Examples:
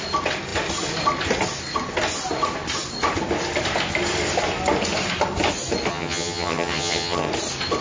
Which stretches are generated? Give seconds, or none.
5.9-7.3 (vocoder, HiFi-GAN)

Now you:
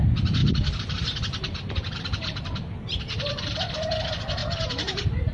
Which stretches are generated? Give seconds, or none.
0.4-3.6 (vocoder, BigVGAN v2); 4.4-5.3

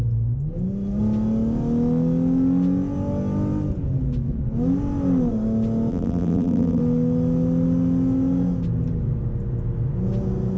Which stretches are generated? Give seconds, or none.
5.9-6.8 (vocoder, BigVGAN v2)

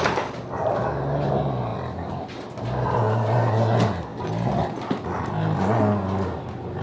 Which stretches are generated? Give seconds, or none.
none

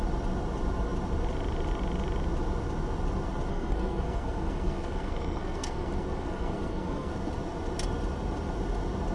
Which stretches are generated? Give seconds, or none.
3.5-7.1 (codec, SNAC)

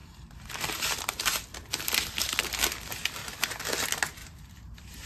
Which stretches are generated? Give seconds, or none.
0.0-0.5 (vocoder, BigVGAN v2); 4.2-5.1

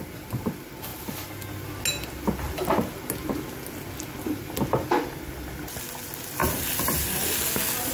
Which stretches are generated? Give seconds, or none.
6.4-7.4 (vocoder, BigVGAN v2)

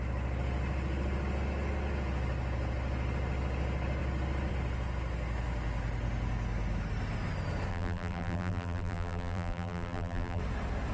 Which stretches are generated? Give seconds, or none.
7.7-10.4 (vocoder, BigVGAN v2)